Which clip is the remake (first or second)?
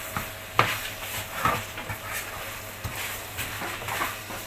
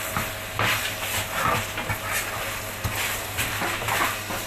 first